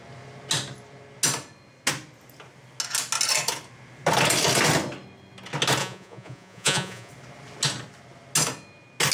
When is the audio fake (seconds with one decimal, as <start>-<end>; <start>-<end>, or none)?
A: 5.8-7.1